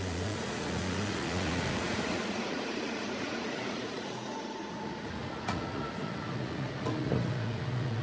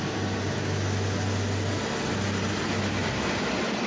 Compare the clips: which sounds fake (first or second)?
first